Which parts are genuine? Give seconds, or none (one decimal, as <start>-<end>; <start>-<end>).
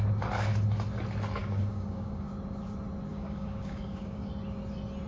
0.0-1.4; 2.3-3.1; 4.3-5.1